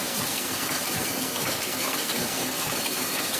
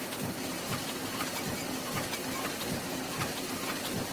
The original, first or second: second